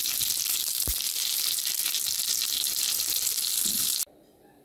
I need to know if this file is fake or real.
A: real